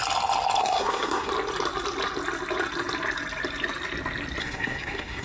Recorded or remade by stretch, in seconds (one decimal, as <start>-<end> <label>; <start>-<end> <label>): 0.0-0.6 recorded; 0.6-1.3 remade; 1.3-4.4 recorded; 4.4-5.2 remade